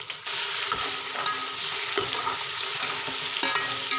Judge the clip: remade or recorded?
recorded